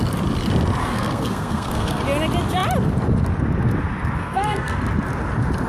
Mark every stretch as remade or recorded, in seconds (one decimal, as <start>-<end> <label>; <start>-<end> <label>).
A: 0.0-0.8 recorded; 0.8-2.0 remade; 2.0-4.2 recorded; 4.2-4.8 remade; 4.8-5.7 recorded